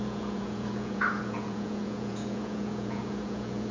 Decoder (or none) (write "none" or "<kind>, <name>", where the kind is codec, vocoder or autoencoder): vocoder, Vocos